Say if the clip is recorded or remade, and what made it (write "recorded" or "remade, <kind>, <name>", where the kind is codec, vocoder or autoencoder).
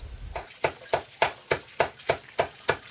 recorded